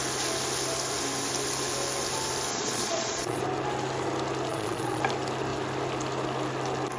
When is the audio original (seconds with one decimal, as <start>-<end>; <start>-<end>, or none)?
0.0-2.5; 3.4-4.5; 5.0-7.0